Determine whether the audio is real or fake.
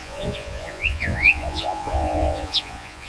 fake